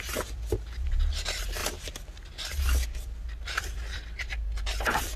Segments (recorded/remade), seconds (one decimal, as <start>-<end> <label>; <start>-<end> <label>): 0.0-5.2 recorded